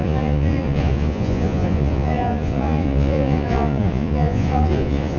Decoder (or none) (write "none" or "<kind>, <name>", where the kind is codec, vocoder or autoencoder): vocoder, Vocos